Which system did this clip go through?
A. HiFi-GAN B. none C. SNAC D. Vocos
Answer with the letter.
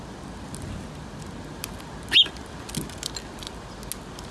B